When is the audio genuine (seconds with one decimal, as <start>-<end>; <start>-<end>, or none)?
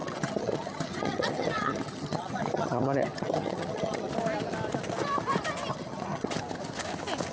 4.1-5.7; 6.3-7.3